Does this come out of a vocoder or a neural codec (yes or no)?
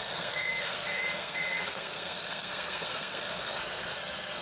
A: yes